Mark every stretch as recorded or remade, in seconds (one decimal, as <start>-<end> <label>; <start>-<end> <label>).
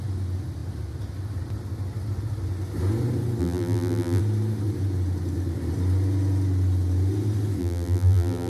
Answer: 0.0-3.4 recorded; 3.4-4.2 remade; 4.2-7.6 recorded; 7.6-8.5 remade